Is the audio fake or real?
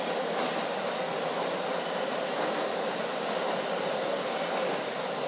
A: real